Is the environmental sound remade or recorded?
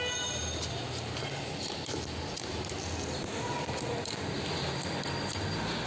recorded